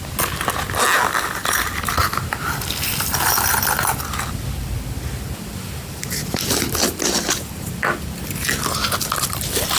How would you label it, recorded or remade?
recorded